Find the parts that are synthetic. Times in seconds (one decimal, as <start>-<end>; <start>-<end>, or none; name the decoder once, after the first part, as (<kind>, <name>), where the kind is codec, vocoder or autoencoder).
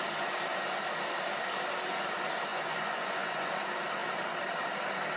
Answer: 2.5-3.5 (vocoder, Vocos)